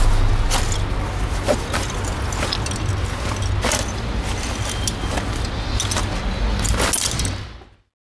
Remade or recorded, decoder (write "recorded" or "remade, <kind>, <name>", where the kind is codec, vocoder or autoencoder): recorded